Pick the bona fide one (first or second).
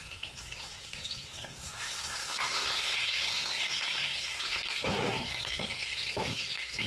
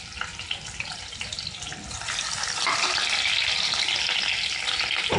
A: second